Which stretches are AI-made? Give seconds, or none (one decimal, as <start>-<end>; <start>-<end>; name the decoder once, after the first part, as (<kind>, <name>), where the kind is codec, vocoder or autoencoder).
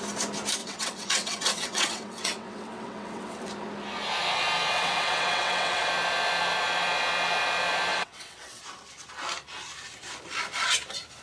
0.6-3.5 (vocoder, WaveNeXt); 4.7-5.9; 7.9-8.6